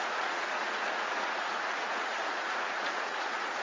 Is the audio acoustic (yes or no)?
no